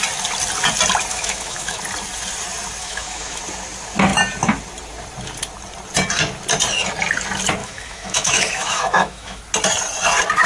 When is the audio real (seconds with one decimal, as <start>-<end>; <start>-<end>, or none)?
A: 0.0-1.1; 1.8-2.8; 3.4-7.6; 9.4-10.5